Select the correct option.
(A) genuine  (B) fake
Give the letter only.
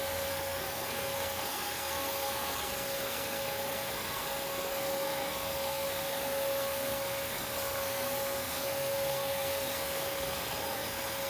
B